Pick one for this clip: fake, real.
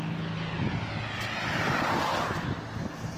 real